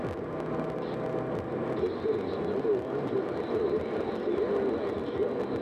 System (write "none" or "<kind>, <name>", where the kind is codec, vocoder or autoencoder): none